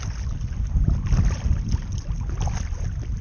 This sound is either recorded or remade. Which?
recorded